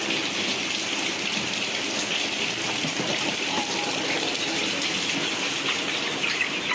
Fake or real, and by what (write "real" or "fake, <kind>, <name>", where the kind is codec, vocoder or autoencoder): real